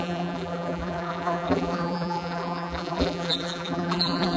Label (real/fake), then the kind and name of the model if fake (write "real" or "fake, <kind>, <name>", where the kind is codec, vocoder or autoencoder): fake, vocoder, BigVGAN v2